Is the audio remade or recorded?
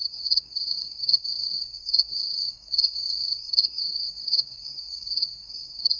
remade